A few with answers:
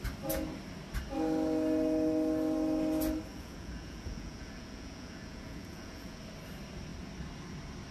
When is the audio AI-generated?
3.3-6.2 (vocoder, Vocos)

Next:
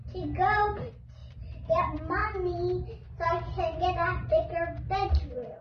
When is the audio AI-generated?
1.2-1.8 (vocoder, BigVGAN v2)

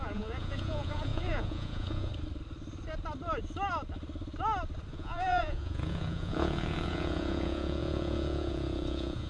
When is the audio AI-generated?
0.0-2.1 (vocoder, Vocos); 4.9-9.3

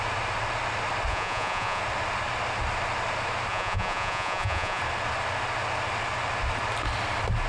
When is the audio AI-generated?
1.1-1.8 (vocoder, Vocos); 3.5-4.8

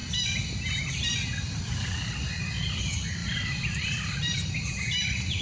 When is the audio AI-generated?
3.2-4.8 (vocoder, BigVGAN v2)

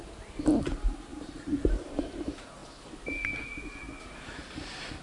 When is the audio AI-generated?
0.0-2.6 (vocoder, BigVGAN v2); 4.1-5.0

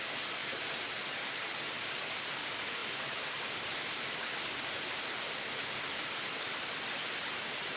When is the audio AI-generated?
2.8-4.2 (vocoder, BigVGAN v2)

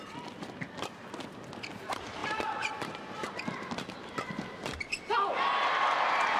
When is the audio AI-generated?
2.2-3.7 (vocoder, BigVGAN v2)